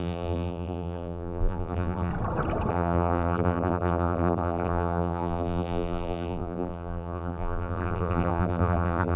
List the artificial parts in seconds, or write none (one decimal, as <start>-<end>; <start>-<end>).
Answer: 0.0-2.1; 2.7-9.2